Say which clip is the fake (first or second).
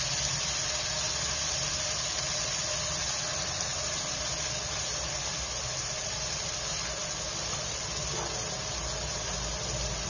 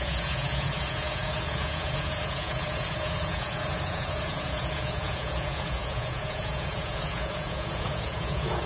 second